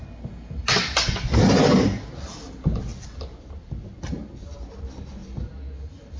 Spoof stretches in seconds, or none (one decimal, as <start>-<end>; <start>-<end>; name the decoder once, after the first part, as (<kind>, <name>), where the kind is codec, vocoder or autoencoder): 2.9-4.6 (vocoder, BigVGAN v2)